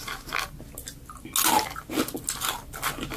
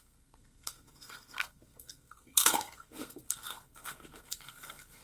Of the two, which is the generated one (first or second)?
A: second